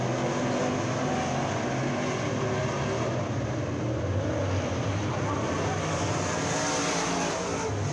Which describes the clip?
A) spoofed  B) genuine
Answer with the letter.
B